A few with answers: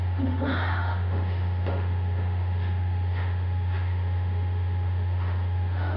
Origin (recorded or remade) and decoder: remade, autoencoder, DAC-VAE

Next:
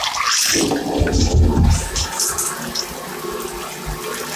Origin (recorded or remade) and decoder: recorded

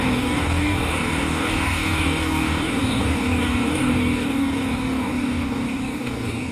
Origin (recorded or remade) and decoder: remade, codec, DAC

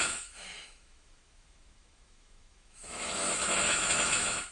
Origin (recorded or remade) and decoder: remade, autoencoder, DAC-VAE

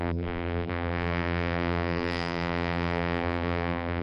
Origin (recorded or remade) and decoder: remade, vocoder, BigVGAN v2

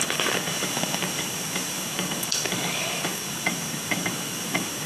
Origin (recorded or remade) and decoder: remade, codec, DAC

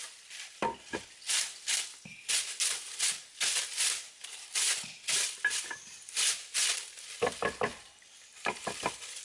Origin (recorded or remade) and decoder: recorded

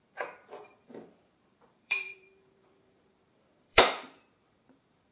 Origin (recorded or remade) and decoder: remade, vocoder, BigVGAN v2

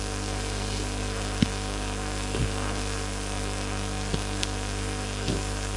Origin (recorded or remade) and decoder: remade, codec, SNAC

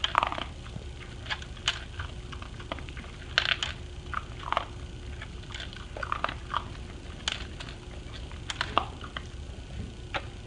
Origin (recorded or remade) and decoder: recorded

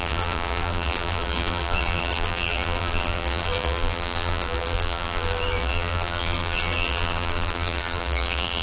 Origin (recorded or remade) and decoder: remade, vocoder, BigVGAN v2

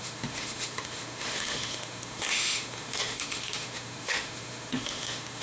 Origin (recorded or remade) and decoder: remade, autoencoder, DAC-VAE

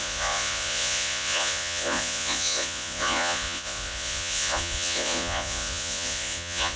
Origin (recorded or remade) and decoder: remade, vocoder, Vocos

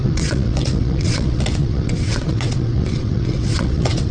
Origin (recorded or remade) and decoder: remade, vocoder, WaveNeXt